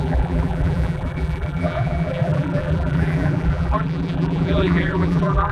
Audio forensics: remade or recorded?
remade